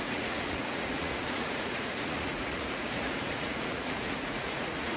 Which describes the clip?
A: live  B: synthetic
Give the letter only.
B